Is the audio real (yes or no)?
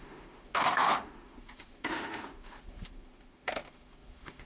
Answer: no